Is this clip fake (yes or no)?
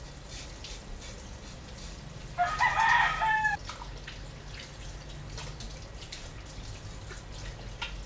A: no